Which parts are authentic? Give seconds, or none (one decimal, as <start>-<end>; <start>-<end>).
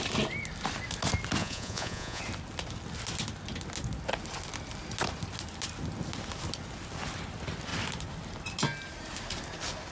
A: 0.0-1.4; 2.2-9.9